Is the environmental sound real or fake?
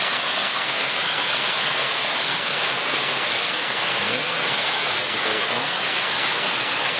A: fake